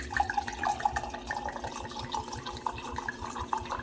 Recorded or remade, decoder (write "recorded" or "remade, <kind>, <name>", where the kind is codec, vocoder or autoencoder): recorded